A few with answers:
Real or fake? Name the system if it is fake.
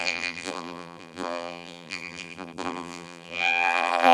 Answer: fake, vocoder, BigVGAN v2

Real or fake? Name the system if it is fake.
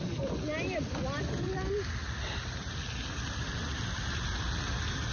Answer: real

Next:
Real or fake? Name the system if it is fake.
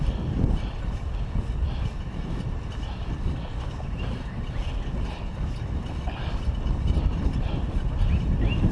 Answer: real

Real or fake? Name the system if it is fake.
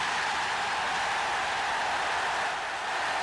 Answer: real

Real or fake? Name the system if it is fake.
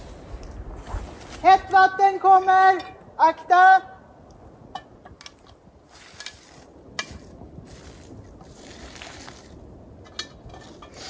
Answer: real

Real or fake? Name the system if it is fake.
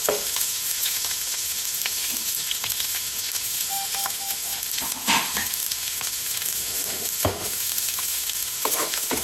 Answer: fake, autoencoder, DAC-VAE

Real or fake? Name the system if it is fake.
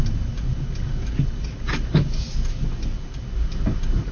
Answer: real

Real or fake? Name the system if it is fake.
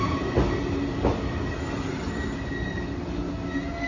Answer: real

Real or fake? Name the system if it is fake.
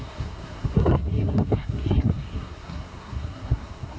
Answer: fake, codec, SNAC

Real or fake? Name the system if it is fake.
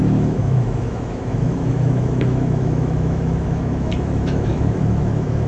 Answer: fake, autoencoder, DAC-VAE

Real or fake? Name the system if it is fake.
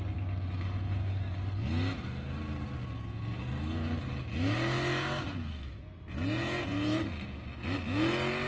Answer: real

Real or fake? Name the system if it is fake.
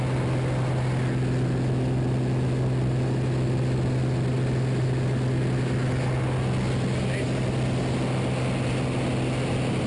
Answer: real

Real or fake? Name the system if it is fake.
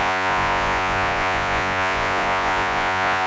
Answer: fake, vocoder, Vocos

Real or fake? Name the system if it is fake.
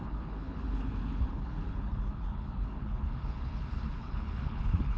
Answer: fake, codec, HILCodec